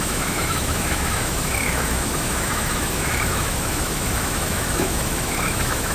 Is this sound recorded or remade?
remade